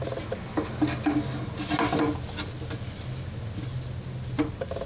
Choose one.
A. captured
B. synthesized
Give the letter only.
A